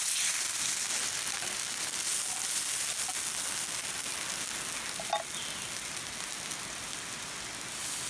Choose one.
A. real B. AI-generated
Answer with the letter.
A